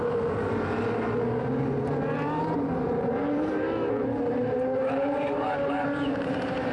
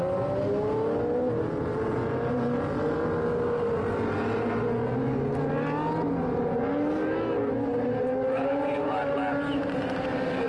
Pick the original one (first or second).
second